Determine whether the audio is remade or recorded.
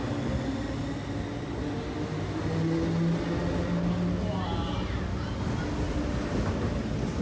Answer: recorded